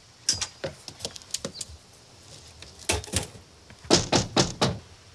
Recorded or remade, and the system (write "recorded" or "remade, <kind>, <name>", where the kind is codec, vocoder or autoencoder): recorded